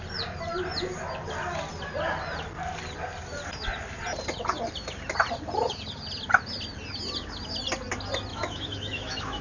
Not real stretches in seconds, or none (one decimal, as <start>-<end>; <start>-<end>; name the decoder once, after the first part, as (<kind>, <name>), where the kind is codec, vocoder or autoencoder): 8.3-9.4 (autoencoder, DAC-VAE)